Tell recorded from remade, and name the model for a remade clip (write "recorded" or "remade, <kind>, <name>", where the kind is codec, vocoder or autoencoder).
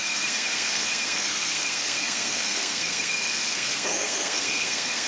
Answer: remade, codec, SNAC